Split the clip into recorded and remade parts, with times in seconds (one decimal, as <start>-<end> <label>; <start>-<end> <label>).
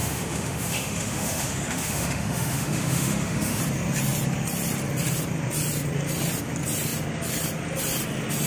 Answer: 0.0-3.6 remade; 3.6-8.5 recorded